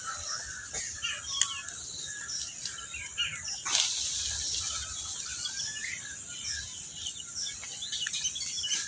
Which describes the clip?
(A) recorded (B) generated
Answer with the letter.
A